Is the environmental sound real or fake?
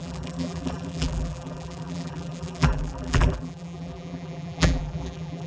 fake